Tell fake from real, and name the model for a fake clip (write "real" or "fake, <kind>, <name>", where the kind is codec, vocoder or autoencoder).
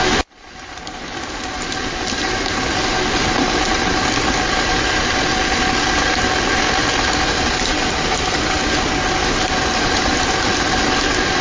real